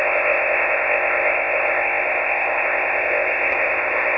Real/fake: fake